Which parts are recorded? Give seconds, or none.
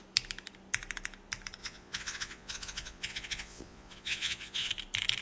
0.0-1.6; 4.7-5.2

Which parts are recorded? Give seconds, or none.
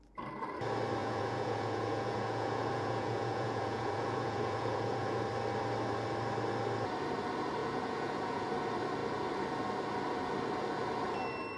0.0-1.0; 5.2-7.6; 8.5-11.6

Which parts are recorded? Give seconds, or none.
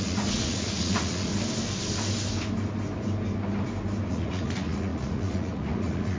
1.3-4.1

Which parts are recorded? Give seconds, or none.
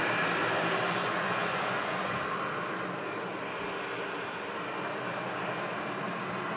0.0-1.0; 2.2-6.6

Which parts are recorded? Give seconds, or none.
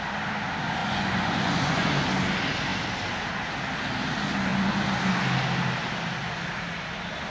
0.0-0.8; 1.9-7.3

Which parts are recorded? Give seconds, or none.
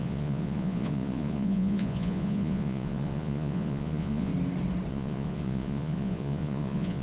4.3-4.9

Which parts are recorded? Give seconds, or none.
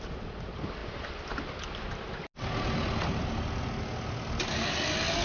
0.0-5.2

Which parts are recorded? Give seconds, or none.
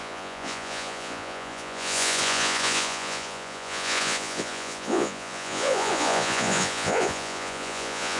none